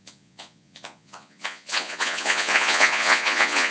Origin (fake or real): fake